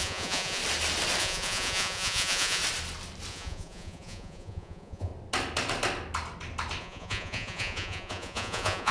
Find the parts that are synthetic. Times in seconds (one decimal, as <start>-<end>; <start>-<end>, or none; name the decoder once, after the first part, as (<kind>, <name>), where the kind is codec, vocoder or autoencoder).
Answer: 0.0-0.6 (vocoder, Vocos); 1.2-2.6; 3.3-5.1; 6.8-8.9